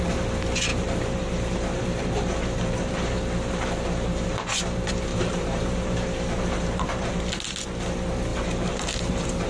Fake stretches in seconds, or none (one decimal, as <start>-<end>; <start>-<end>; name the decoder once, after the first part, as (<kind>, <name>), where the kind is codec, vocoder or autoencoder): 0.7-4.6 (vocoder, BigVGAN v2); 5.1-7.1; 8.3-9.5